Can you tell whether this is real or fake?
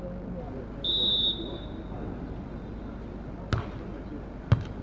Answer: real